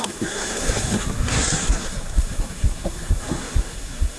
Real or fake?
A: fake